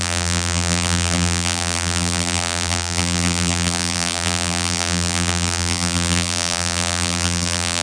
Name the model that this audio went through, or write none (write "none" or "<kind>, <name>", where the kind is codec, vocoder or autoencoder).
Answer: vocoder, BigVGAN v2